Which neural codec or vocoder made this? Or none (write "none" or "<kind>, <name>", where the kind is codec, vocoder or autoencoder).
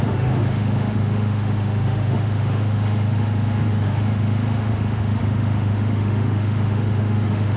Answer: autoencoder, DAC-VAE